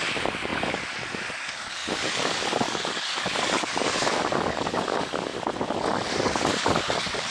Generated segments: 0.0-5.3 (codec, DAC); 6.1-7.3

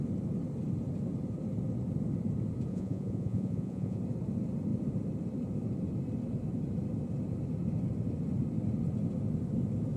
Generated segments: 2.7-4.0 (vocoder, Vocos)

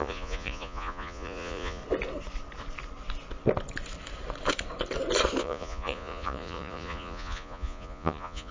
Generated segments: 0.0-1.8 (vocoder, Vocos); 5.4-8.5

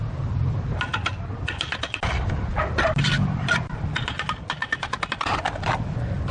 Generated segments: none

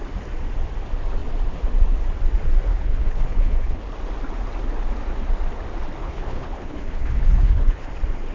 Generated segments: 2.7-3.8 (codec, HILCodec); 6.0-7.9

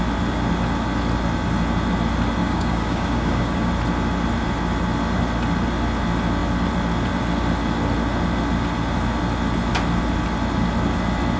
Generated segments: 2.4-3.7 (codec, DAC)